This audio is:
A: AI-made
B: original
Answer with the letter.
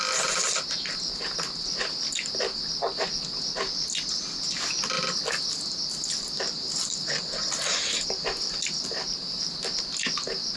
B